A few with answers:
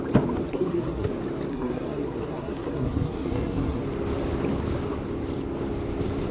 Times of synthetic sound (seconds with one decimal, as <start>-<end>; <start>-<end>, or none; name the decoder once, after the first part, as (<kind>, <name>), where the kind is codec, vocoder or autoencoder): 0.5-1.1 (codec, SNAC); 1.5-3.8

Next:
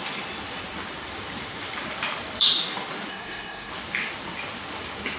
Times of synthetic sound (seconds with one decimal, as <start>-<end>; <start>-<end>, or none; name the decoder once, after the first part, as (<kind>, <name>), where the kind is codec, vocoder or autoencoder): 3.1-3.7 (codec, SNAC)

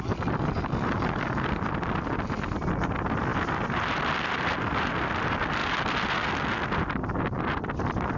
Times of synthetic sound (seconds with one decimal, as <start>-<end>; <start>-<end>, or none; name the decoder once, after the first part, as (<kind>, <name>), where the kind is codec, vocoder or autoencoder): none

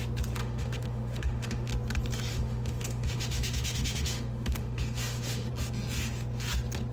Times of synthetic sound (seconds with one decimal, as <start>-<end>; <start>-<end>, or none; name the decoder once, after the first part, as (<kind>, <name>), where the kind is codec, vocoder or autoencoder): 0.4-1.7 (autoencoder, DAC-VAE); 2.3-5.5

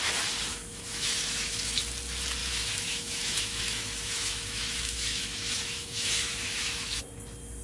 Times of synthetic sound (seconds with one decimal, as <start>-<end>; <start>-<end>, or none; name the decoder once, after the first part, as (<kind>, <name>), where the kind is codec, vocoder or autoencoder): 0.5-1.8 (autoencoder, DAC-VAE); 2.4-7.0